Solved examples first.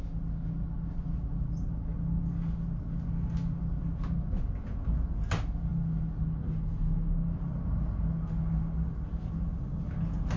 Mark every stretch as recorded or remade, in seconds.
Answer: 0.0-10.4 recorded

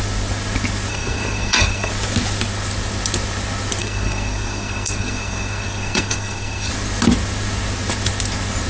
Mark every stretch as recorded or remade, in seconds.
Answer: 0.0-0.9 recorded; 0.9-1.9 remade; 1.9-3.8 recorded; 3.8-6.7 remade; 6.7-8.7 recorded

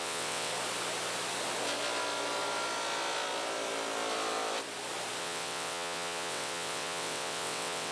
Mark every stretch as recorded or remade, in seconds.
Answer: 0.0-0.5 remade; 0.5-5.2 recorded; 5.2-7.9 remade

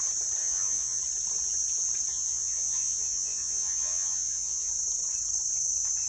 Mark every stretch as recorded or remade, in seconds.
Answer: 0.0-0.4 recorded; 0.4-1.0 remade; 1.0-2.1 recorded; 2.1-4.7 remade; 4.7-6.1 recorded

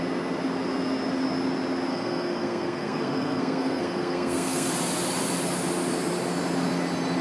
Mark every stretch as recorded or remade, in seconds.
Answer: 0.0-1.9 recorded; 1.9-4.7 remade; 4.7-7.2 recorded

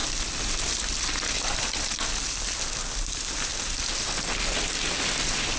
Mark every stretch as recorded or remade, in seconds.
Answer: 0.0-5.6 recorded

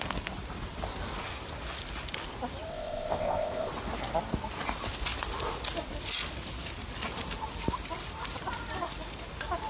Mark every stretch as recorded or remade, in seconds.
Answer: 0.0-2.7 recorded; 2.7-3.7 remade; 3.7-9.7 recorded